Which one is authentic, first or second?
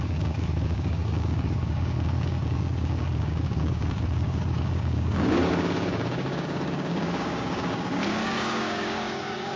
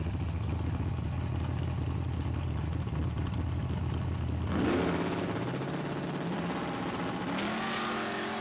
second